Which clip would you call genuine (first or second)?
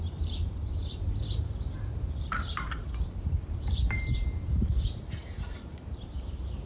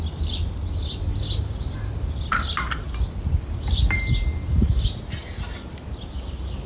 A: second